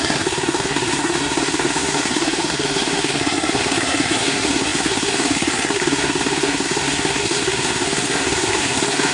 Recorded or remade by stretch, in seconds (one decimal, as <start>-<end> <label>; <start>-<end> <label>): 0.0-9.1 remade